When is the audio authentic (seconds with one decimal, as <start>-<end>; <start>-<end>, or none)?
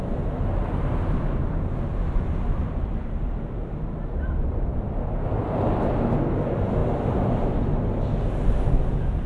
0.0-9.3